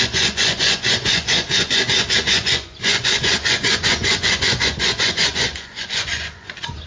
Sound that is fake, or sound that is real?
fake